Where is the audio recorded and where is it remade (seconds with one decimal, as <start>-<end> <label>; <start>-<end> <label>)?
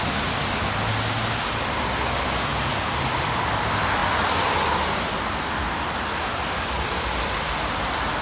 0.0-8.2 recorded